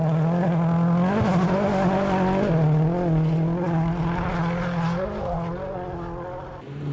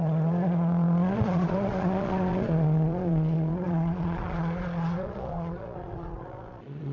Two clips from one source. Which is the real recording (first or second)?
first